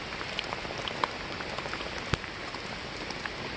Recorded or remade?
recorded